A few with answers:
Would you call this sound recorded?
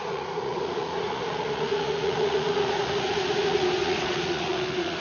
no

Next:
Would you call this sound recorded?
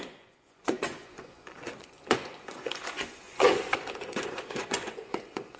no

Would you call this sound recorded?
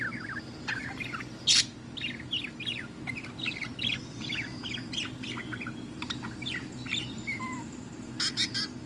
yes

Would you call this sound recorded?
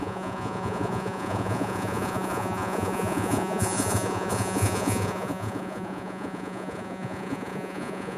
no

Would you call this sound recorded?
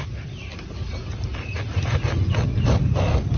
yes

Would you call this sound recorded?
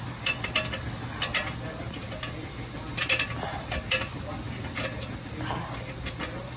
yes